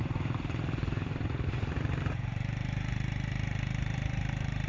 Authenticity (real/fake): fake